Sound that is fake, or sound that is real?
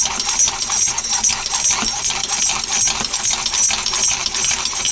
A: real